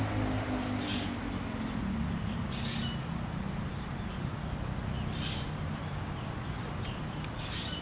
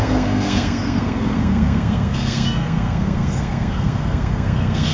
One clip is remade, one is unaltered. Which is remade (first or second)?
second